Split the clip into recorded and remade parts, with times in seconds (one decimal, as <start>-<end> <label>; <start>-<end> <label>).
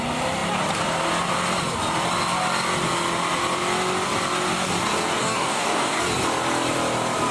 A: 0.0-5.2 recorded; 5.2-6.0 remade; 6.0-7.3 recorded